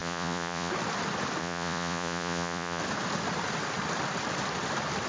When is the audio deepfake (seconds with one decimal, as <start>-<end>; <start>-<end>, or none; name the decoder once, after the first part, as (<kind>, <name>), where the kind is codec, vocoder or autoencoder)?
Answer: 0.0-0.7 (vocoder, Vocos); 1.4-2.8